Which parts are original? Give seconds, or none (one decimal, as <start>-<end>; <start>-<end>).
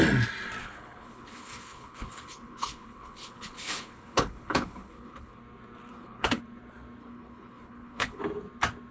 0.0-0.6; 5.4-5.9; 6.4-7.0; 8.2-8.9